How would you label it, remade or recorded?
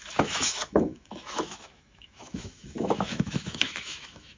remade